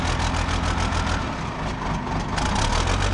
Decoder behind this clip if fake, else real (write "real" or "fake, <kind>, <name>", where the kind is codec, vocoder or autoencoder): real